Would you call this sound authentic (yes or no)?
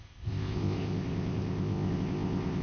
no